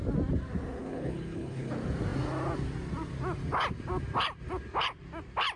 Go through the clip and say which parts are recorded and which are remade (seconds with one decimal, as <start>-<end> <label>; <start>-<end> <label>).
0.0-0.8 recorded; 0.8-1.7 remade; 1.7-5.6 recorded